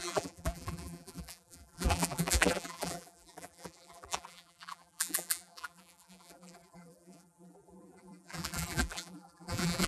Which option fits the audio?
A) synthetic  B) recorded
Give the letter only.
A